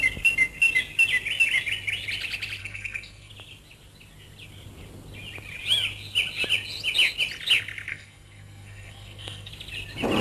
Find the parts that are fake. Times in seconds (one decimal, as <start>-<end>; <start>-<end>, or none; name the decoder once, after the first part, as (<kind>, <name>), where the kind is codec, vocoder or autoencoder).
2.6-3.3 (codec, SNAC); 7.9-9.5

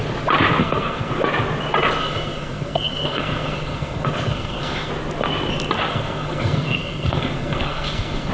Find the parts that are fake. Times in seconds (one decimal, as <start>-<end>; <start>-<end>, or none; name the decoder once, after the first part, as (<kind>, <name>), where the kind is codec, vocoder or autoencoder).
0.6-1.1 (codec, SNAC); 2.0-4.9; 5.9-8.3

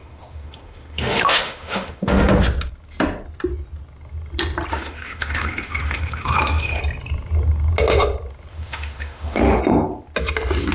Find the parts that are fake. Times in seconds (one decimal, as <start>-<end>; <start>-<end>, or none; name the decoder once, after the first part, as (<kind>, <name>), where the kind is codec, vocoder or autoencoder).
0.0-2.3 (autoencoder, DAC-VAE); 4.7-6.8; 8.5-9.6

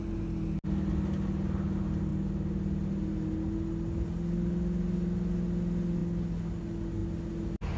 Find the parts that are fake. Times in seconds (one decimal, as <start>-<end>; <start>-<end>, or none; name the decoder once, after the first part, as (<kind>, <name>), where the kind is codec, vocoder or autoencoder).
none

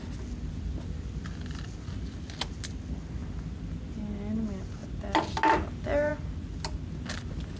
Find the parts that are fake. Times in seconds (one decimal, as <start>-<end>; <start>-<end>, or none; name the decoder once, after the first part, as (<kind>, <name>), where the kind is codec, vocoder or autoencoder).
none

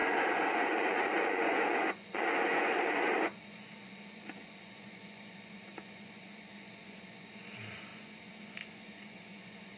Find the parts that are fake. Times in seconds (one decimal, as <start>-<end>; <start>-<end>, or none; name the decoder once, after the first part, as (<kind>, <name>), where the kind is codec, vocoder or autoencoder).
0.0-9.8 (vocoder, Vocos)